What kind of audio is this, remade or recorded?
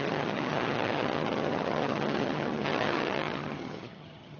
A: remade